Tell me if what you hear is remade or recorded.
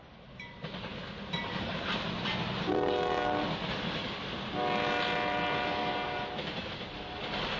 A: recorded